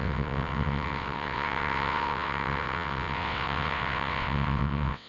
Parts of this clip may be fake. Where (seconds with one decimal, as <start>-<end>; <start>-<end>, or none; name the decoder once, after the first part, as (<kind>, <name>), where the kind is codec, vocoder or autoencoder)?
0.0-5.1 (vocoder, WaveNeXt)